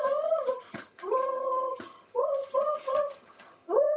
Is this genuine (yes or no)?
no